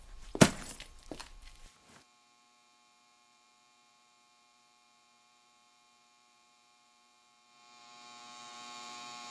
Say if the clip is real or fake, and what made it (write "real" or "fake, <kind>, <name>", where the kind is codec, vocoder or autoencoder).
fake, vocoder, BigVGAN v2